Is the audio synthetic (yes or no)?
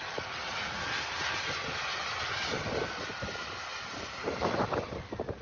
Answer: no